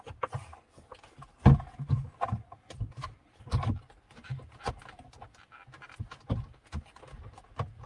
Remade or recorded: recorded